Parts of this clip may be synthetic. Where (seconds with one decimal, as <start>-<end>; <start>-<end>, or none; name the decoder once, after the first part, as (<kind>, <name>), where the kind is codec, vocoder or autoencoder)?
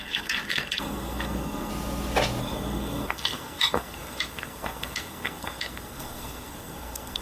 0.0-1.7 (codec, SNAC); 2.4-7.2